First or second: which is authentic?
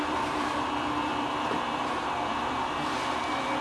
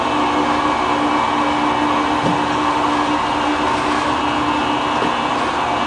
second